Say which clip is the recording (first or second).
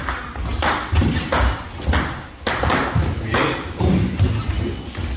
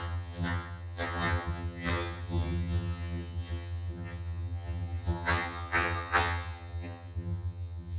first